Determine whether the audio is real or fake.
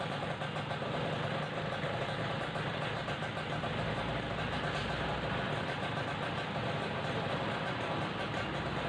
real